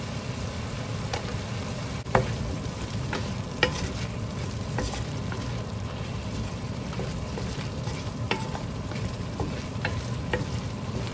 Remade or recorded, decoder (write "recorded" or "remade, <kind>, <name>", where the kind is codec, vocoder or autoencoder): remade, vocoder, BigVGAN v2